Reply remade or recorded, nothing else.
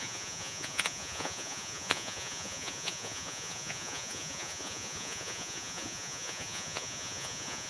remade